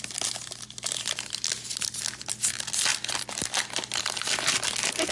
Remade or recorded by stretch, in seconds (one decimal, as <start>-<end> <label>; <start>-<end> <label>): 0.0-5.1 recorded